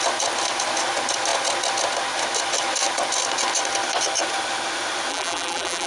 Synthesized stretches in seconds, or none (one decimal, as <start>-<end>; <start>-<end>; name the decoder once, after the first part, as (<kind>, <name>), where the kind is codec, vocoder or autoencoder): 5.1-5.9 (vocoder, BigVGAN v2)